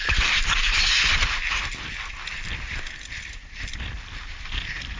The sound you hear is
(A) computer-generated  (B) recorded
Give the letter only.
B